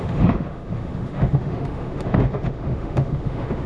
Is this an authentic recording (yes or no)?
no